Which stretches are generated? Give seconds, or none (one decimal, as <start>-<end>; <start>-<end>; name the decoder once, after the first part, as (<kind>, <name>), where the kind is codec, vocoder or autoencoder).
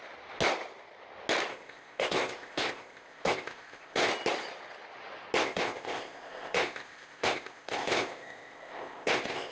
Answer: 1.5-4.1 (codec, ZipCodec); 5.4-9.5